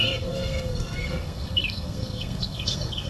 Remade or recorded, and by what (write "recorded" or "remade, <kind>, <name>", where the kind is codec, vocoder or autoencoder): remade, codec, SNAC